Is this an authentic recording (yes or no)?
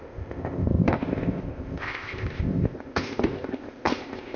no